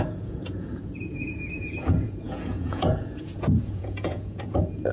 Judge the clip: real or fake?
fake